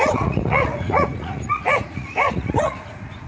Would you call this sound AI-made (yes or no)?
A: yes